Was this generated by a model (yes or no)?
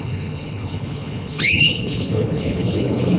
yes